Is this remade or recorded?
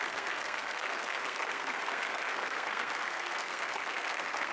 remade